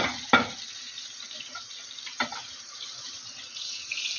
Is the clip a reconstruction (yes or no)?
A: no